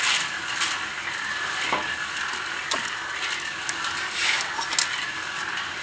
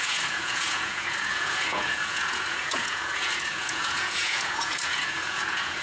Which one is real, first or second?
first